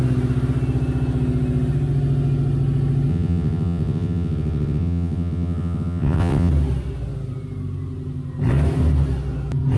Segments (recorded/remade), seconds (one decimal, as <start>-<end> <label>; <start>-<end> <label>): 0.0-3.1 recorded; 3.1-6.5 remade; 6.5-9.8 recorded